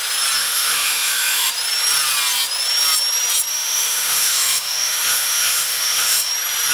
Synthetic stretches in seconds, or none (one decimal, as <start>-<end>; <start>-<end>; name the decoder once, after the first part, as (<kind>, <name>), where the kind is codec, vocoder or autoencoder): 0.4-1.5 (autoencoder, DAC-VAE); 3.5-6.3